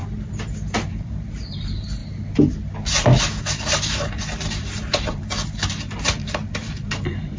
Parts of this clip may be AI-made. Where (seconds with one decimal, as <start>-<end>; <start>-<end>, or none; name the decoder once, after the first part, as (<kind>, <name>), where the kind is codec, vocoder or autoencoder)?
0.9-2.0 (vocoder, BigVGAN v2); 3.4-7.4